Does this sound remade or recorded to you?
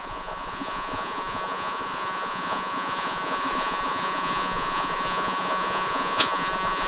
remade